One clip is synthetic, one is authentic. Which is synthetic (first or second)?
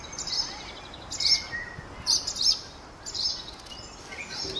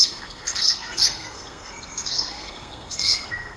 second